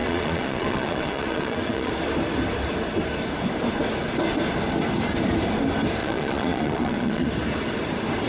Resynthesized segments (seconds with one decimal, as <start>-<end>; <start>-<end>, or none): 0.0-1.9; 6.0-7.3